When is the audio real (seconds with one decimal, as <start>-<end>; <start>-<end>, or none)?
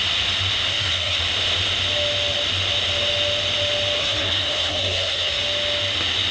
0.0-0.7; 1.2-4.0; 5.4-6.3